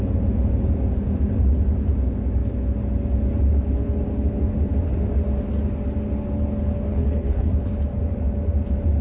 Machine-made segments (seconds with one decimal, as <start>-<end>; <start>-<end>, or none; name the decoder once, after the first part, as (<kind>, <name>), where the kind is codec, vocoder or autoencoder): 6.9-7.5 (codec, HILCodec)